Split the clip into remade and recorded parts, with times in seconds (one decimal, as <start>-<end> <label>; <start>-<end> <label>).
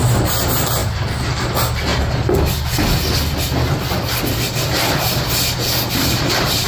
0.0-0.8 recorded; 0.8-1.5 remade; 1.5-6.7 recorded